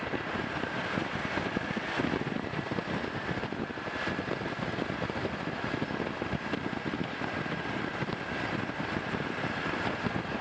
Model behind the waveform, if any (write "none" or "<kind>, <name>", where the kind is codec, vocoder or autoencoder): none